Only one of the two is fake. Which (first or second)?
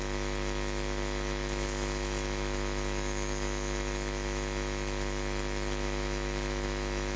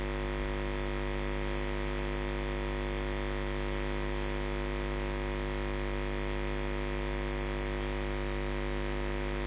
first